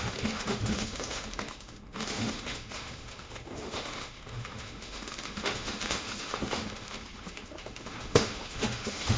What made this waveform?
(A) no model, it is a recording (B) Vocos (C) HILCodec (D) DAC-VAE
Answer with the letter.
D